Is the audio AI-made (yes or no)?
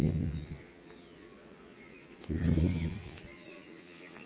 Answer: yes